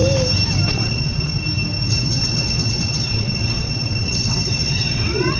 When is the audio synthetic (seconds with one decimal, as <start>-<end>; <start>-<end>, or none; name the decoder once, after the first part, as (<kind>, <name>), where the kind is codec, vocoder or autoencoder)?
0.7-1.3 (vocoder, WaveNeXt); 1.9-5.4